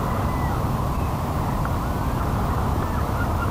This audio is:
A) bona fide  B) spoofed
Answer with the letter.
A